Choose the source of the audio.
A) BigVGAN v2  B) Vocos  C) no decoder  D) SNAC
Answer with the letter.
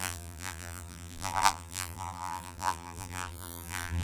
A